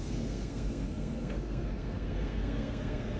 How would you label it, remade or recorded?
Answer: remade